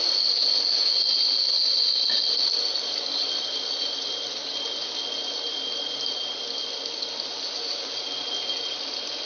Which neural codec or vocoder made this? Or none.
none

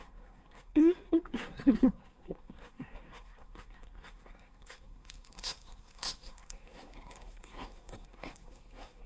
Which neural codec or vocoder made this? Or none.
codec, SNAC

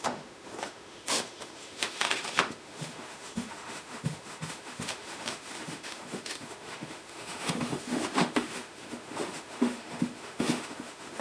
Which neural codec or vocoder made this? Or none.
autoencoder, DAC-VAE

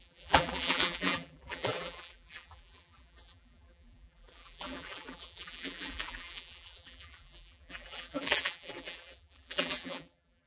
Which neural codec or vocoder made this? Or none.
vocoder, BigVGAN v2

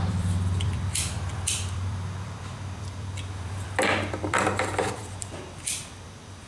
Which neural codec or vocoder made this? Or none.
vocoder, BigVGAN v2